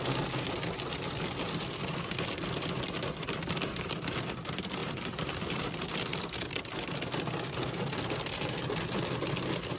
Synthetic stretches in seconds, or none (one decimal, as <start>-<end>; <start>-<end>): none

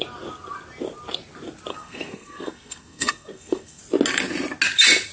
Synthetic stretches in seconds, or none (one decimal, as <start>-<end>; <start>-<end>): 1.7-3.8

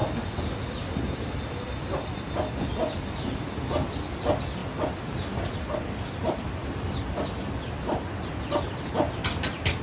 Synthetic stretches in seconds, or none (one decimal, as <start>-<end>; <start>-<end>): none

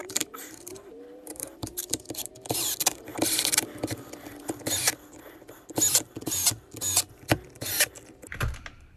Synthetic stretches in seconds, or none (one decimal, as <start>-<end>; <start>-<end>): 0.0-2.3

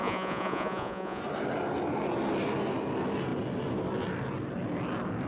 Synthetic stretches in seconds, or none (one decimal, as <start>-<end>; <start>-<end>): 0.0-1.2

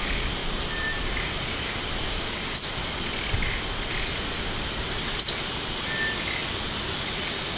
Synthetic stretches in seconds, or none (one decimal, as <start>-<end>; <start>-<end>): 0.4-1.1

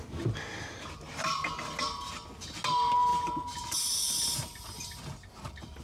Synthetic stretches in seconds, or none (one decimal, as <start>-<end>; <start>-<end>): 3.1-5.8